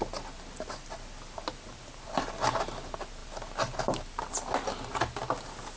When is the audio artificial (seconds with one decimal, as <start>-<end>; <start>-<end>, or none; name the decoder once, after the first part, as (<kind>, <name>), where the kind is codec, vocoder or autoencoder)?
none